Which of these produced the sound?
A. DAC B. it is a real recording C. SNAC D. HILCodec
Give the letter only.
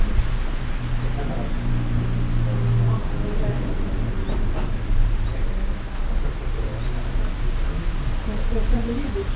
B